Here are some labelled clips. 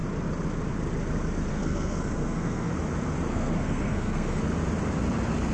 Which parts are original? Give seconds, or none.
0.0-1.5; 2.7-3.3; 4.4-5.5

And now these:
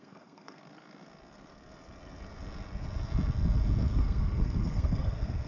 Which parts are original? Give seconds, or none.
0.6-3.9

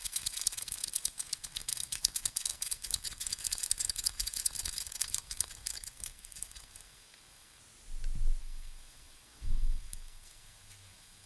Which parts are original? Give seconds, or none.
7.6-8.4

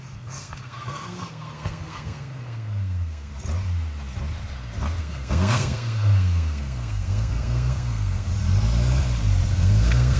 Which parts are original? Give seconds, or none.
3.3-5.0; 8.3-9.5

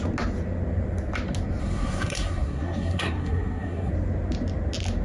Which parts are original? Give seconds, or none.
0.0-1.6; 3.9-5.0

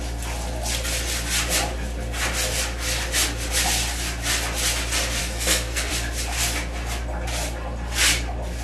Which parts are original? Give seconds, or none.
0.0-5.2; 5.9-8.6

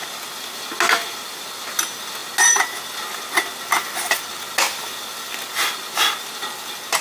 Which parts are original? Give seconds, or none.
0.0-7.0

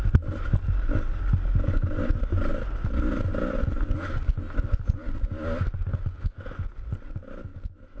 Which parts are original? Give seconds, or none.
0.0-8.0